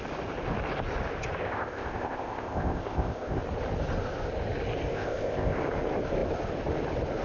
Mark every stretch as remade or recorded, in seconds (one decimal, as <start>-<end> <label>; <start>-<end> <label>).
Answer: 0.0-1.4 recorded; 1.4-3.4 remade; 3.4-4.9 recorded; 4.9-5.6 remade; 5.6-7.2 recorded